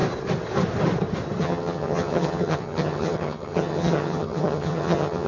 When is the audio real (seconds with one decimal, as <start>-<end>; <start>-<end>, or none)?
0.0-1.4